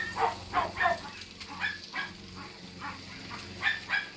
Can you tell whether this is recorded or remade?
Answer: recorded